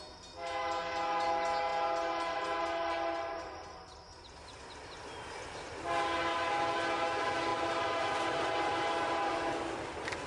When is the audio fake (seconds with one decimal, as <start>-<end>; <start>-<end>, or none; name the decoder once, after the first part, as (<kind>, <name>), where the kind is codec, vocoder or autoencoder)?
none